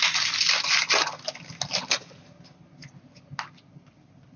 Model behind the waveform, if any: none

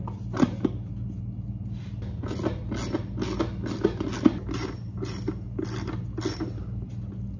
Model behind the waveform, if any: none